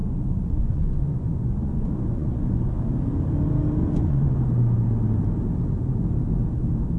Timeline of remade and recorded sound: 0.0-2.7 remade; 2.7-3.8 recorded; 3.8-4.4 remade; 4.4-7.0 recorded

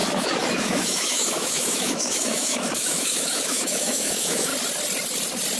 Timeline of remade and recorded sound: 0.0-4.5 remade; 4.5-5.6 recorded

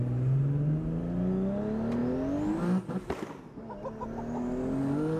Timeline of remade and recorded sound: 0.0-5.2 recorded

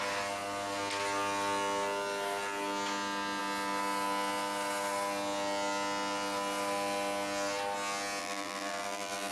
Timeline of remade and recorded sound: 0.0-8.2 recorded; 8.2-9.3 remade